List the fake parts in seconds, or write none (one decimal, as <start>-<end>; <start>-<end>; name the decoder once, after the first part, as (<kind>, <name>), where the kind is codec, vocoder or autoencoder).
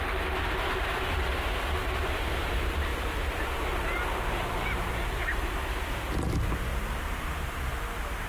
1.8-2.3 (vocoder, BigVGAN v2); 2.9-5.4; 6.7-7.8